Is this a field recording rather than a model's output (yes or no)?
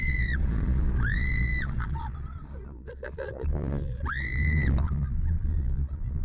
no